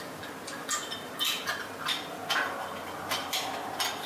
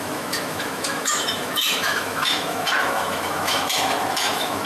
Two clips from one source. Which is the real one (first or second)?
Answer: first